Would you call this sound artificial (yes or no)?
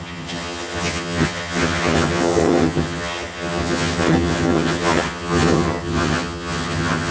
yes